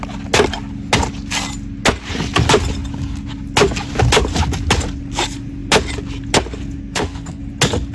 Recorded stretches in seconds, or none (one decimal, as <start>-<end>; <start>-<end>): 0.0-6.8; 7.4-7.9

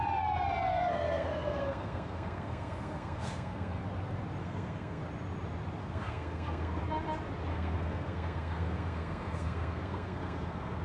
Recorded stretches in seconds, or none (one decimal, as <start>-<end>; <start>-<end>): 0.0-0.7; 3.8-4.4; 5.0-5.8; 6.8-7.5

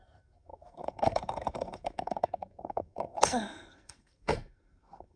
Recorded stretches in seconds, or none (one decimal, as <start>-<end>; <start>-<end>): none

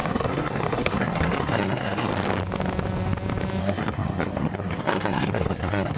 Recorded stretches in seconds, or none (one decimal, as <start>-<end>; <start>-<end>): 2.1-3.6